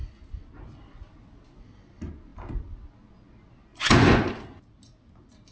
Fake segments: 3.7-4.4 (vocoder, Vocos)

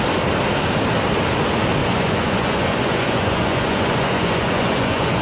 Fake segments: 1.8-5.2 (vocoder, Vocos)

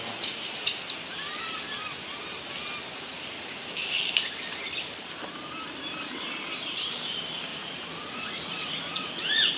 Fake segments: 7.5-9.6 (vocoder, Vocos)

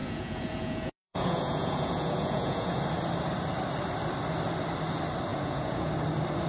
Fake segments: 0.0-2.8 (vocoder, Vocos); 5.3-5.9

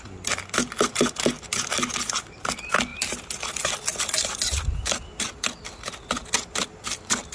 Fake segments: none

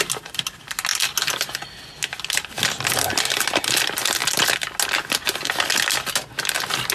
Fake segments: none

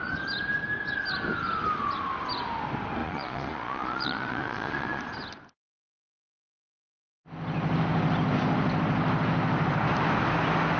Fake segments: 3.0-5.0 (vocoder, Vocos)